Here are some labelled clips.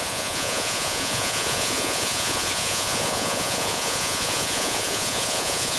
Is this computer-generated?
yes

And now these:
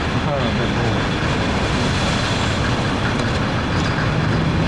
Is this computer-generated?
no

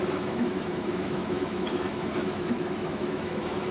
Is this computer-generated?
yes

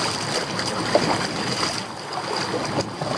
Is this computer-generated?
no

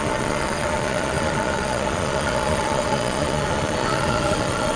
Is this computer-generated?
yes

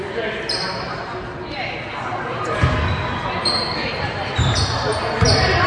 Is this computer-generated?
no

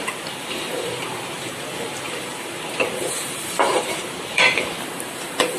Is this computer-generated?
yes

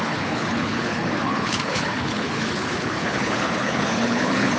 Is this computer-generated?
yes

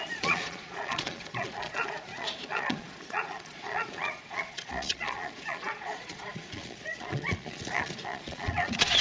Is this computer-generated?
yes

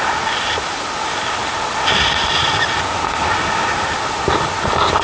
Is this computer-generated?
no